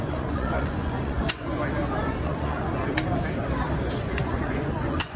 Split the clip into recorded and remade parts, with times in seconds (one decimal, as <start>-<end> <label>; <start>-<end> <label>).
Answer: 0.0-1.5 remade; 1.5-2.0 recorded; 2.0-2.8 remade; 2.8-4.0 recorded; 4.0-5.2 remade